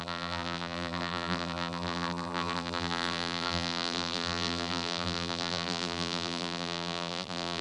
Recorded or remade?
remade